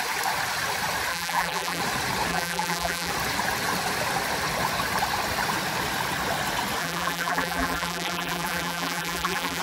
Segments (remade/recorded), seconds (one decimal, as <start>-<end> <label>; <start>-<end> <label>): 0.0-1.1 recorded; 1.1-1.8 remade; 1.8-2.3 recorded; 2.3-3.1 remade; 3.1-6.8 recorded; 6.8-9.6 remade

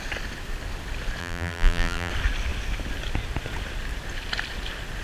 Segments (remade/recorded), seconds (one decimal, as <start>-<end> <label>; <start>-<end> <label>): 0.0-1.2 recorded; 1.2-2.1 remade; 2.1-5.0 recorded

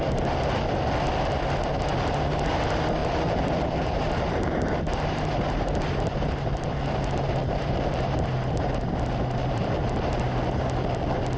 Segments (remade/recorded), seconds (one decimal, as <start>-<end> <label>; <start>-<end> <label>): 0.0-3.0 recorded; 3.0-6.7 remade; 6.7-7.4 recorded; 7.4-8.7 remade; 8.7-9.4 recorded; 9.4-10.1 remade; 10.1-11.4 recorded

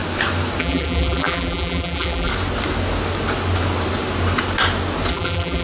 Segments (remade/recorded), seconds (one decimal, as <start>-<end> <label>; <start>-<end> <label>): 0.0-0.6 recorded; 0.6-2.3 remade; 2.3-5.1 recorded; 5.1-5.6 remade

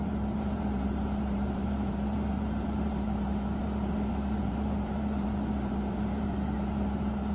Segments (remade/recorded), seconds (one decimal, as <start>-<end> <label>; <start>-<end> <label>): 0.0-7.3 remade

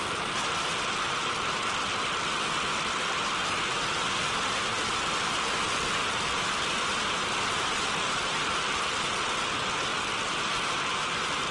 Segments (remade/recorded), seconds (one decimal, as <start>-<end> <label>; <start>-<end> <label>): 0.0-6.0 recorded; 6.0-8.2 remade; 8.2-9.9 recorded; 9.9-10.5 remade; 10.5-11.5 recorded